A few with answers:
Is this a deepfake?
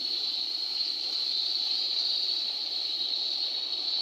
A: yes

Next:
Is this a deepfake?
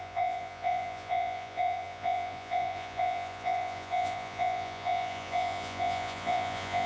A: yes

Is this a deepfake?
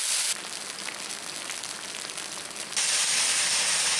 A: no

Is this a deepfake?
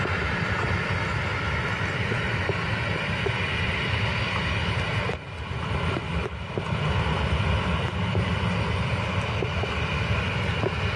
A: no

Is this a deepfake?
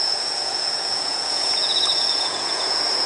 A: yes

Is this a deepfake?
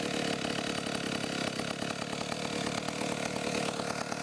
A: no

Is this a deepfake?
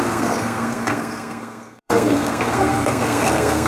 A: yes